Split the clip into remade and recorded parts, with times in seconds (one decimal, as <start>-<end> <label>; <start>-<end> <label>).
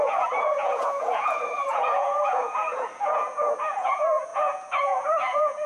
0.0-5.7 remade